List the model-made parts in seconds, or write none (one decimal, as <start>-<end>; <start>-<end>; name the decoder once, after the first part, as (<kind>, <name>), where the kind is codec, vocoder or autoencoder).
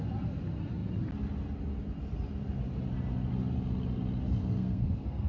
4.4-5.3 (codec, SNAC)